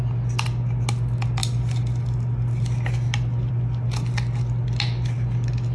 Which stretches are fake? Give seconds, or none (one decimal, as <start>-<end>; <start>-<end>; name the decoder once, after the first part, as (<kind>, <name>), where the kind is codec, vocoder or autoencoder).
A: none